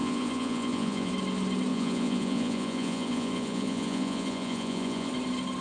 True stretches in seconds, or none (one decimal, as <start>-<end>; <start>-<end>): 1.1-1.7; 5.1-5.6